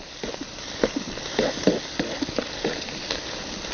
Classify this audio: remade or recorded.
recorded